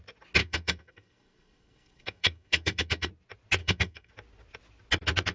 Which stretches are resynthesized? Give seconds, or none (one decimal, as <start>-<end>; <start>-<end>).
0.4-3.1; 3.6-4.1